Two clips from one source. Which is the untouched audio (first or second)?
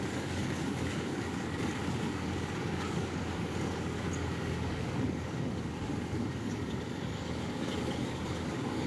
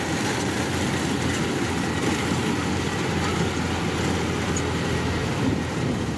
second